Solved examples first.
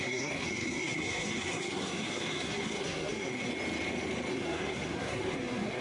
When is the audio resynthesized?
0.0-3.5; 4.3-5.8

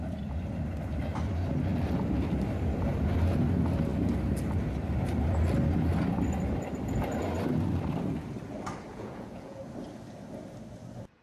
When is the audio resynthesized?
8.9-9.6

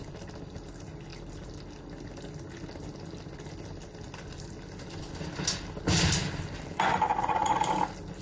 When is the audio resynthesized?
7.1-7.7

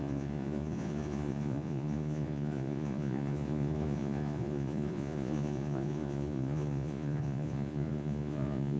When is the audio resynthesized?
0.0-8.8

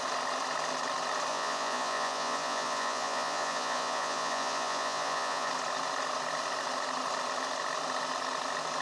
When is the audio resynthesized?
1.3-5.5

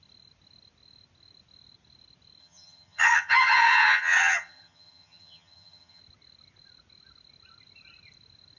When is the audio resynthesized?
2.4-6.0

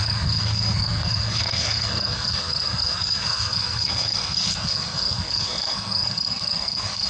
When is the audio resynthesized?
0.0-7.1

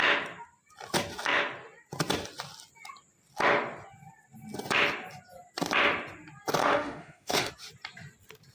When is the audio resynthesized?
6.6-7.5